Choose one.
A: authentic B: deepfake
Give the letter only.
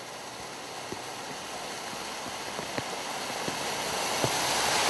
A